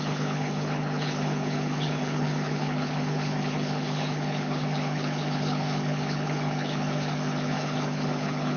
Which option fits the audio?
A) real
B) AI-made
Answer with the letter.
B